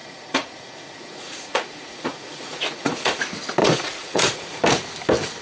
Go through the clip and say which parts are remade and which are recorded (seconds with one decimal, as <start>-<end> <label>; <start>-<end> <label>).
0.0-3.2 remade; 3.2-3.6 recorded; 3.6-4.6 remade; 4.6-5.4 recorded